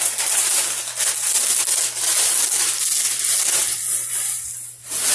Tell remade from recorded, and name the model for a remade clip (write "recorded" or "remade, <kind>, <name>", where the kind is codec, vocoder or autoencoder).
recorded